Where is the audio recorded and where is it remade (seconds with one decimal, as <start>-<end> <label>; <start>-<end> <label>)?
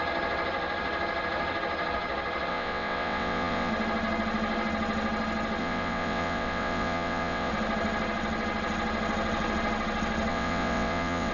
0.0-2.5 recorded; 2.5-3.7 remade; 3.7-5.6 recorded; 5.6-7.5 remade; 7.5-10.3 recorded; 10.3-11.3 remade